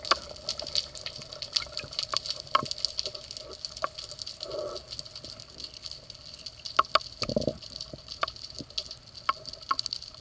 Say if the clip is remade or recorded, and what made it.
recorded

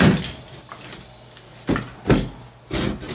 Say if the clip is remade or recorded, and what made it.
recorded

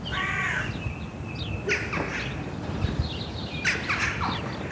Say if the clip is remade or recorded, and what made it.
recorded